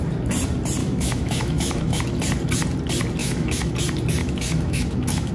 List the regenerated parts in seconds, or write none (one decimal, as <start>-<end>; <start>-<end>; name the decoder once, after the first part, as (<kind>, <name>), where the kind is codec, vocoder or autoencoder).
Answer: 0.8-2.0 (autoencoder, DAC-VAE); 3.2-3.7; 4.2-5.3